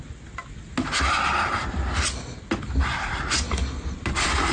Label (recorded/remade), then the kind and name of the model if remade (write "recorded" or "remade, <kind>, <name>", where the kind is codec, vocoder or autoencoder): recorded